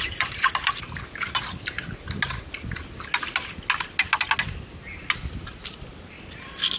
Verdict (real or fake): real